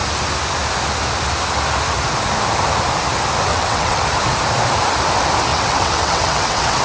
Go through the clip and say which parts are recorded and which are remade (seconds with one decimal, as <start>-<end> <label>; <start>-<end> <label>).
0.0-3.5 recorded; 3.5-4.0 remade; 4.0-5.5 recorded; 5.5-6.8 remade